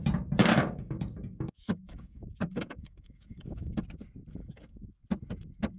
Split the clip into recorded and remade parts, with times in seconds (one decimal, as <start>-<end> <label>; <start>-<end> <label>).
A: 0.0-0.4 recorded; 0.4-3.8 remade; 3.8-4.4 recorded; 4.4-4.9 remade; 4.9-5.8 recorded